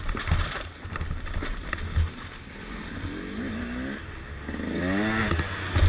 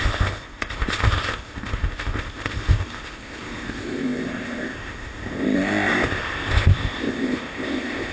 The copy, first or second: second